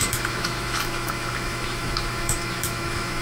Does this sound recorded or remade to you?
remade